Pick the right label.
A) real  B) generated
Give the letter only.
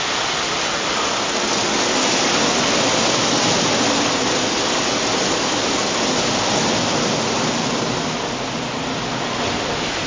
A